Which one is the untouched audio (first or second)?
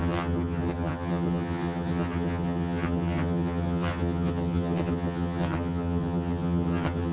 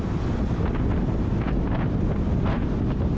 second